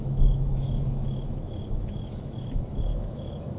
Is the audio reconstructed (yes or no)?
yes